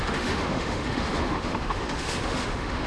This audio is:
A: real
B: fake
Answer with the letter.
B